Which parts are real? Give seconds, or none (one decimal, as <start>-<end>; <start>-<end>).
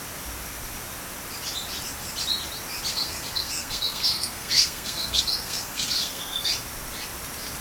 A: 0.0-2.9; 6.5-7.6